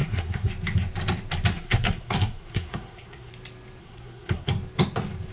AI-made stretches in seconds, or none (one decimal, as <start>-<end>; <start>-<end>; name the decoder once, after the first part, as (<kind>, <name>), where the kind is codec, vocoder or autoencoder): 0.0-0.5 (codec, SNAC); 1.5-3.3; 3.8-4.5